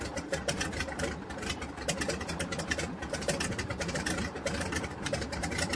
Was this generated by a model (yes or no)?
yes